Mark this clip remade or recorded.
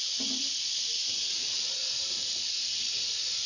remade